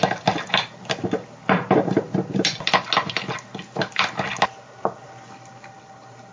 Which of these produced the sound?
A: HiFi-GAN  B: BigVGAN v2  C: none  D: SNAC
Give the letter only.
C